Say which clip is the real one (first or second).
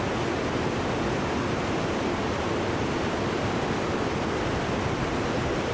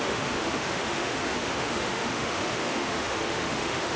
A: first